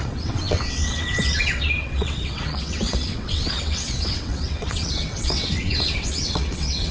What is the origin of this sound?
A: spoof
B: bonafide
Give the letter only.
A